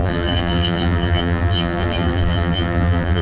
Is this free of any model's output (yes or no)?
no